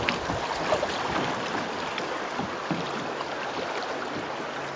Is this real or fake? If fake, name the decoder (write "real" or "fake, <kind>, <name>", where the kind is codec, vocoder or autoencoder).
real